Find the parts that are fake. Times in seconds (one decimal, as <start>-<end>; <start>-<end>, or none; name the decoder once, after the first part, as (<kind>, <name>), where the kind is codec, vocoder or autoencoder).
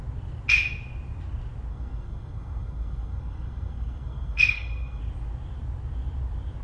1.7-5.0 (codec, SNAC)